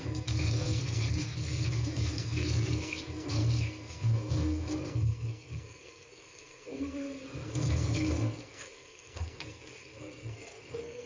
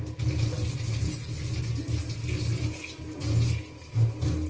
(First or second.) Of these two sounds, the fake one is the first